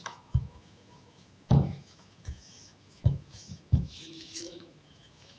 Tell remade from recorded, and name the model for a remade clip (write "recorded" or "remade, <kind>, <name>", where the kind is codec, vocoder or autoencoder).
remade, autoencoder, DAC-VAE